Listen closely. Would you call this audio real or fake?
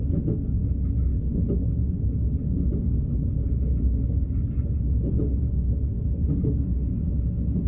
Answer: real